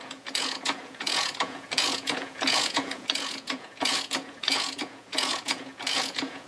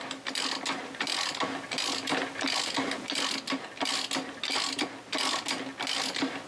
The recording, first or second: second